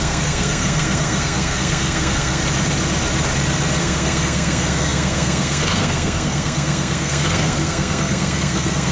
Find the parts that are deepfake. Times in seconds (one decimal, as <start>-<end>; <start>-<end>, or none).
0.0-2.4; 3.8-8.9